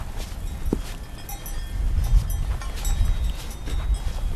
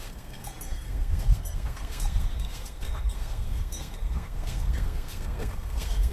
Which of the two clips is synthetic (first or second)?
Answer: second